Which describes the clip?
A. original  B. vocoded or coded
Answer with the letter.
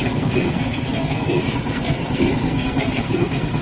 B